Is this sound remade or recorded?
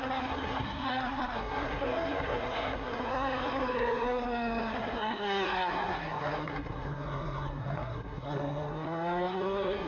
remade